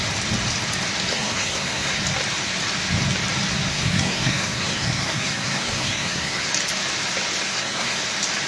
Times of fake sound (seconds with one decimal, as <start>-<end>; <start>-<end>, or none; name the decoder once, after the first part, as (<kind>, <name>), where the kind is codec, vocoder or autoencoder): 1.1-2.0 (codec, SNAC); 3.7-6.5; 7.5-8.0